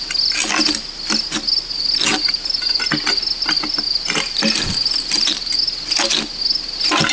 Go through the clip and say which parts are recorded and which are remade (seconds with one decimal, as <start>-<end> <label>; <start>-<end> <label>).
0.0-7.1 recorded